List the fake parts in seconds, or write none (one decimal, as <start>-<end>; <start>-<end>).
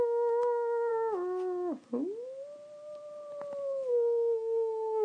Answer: 0.0-0.9; 3.9-5.0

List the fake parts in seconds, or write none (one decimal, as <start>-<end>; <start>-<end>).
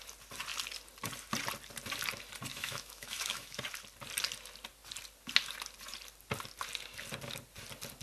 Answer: 2.5-3.6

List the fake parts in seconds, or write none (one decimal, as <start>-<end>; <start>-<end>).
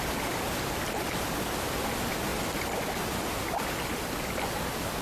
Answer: none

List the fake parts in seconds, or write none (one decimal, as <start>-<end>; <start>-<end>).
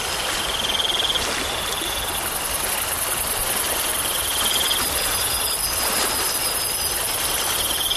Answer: none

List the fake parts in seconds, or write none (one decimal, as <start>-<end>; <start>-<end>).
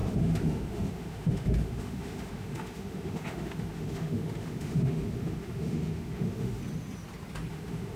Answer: 0.0-6.6; 7.5-8.0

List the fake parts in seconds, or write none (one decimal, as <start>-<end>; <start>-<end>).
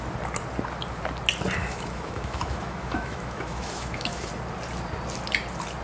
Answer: 1.6-4.3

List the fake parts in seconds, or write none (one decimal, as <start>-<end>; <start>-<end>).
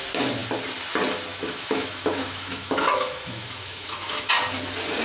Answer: 1.3-4.3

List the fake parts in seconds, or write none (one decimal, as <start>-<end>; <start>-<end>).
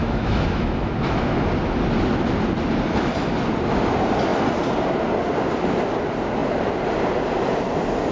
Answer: 0.0-1.4